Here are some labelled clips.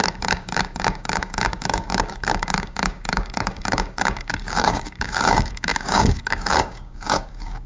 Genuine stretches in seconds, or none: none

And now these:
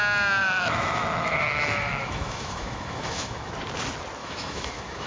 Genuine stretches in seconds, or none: 0.0-0.4; 3.5-4.2

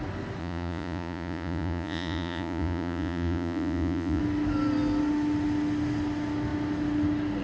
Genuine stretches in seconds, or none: 0.0-0.4; 4.2-7.4

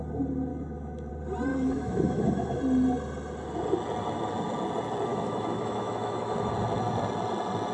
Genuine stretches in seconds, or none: 0.0-0.5; 1.1-1.5; 2.6-5.1; 6.5-7.7